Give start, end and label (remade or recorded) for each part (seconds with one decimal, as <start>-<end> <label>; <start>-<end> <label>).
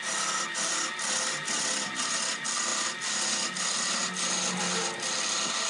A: 0.0-5.7 recorded